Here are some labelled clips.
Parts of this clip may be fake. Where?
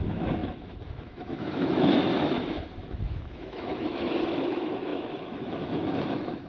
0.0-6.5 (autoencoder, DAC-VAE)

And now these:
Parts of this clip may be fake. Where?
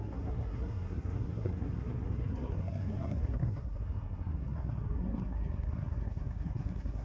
0.0-7.0 (codec, SNAC)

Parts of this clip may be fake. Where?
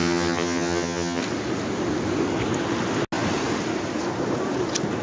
0.0-1.2 (vocoder, HiFi-GAN)